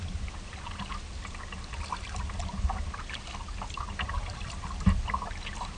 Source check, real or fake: real